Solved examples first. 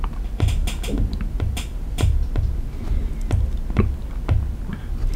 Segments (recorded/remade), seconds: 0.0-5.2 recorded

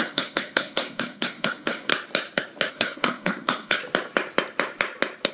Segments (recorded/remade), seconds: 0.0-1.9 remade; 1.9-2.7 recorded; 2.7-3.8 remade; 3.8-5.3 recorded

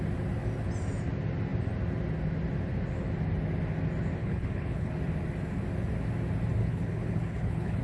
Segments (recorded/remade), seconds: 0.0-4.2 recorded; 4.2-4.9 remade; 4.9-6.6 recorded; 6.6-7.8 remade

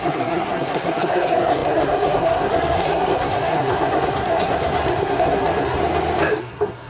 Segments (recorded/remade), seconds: 0.0-5.8 remade; 5.8-6.4 recorded; 6.4-6.9 remade

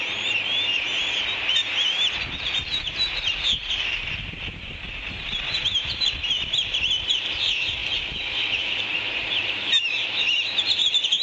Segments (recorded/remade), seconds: 0.0-7.8 remade; 7.8-8.5 recorded; 8.5-11.2 remade

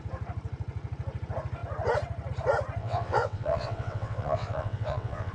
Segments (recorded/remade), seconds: 0.0-2.8 recorded; 2.8-5.3 remade